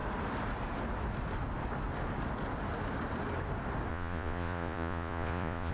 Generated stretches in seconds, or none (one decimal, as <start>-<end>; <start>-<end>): 3.9-5.7